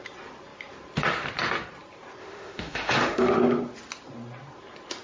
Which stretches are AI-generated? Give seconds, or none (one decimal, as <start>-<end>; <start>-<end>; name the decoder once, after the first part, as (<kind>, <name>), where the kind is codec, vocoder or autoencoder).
2.2-3.4 (autoencoder, DAC-VAE)